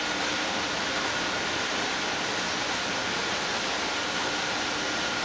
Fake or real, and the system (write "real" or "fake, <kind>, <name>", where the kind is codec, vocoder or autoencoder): real